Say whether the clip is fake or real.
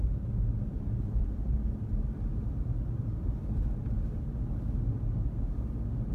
real